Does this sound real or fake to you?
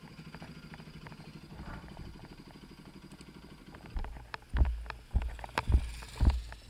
real